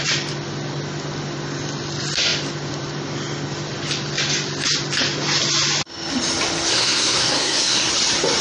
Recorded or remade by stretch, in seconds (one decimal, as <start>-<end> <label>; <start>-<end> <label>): 0.0-6.7 recorded; 6.7-7.9 remade; 7.9-8.4 recorded